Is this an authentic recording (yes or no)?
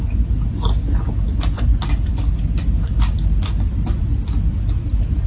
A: yes